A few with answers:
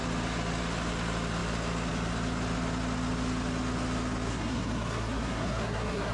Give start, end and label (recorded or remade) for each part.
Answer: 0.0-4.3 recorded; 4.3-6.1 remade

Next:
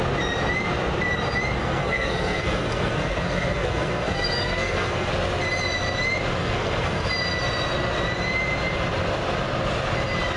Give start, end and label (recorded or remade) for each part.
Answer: 0.0-1.6 recorded; 1.6-5.1 remade; 5.1-6.4 recorded; 6.4-7.1 remade; 7.1-10.4 recorded

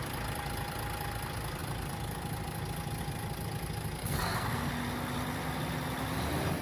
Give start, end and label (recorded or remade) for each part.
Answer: 0.0-4.0 recorded; 4.0-4.7 remade; 4.7-6.6 recorded